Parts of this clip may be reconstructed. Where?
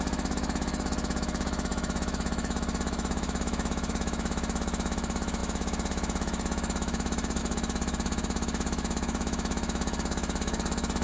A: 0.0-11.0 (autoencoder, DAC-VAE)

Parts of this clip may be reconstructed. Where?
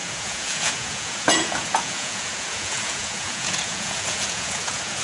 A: 0.0-5.0 (vocoder, Vocos)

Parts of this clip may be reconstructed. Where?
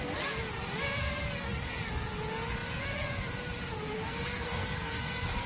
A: 3.9-5.5 (codec, SNAC)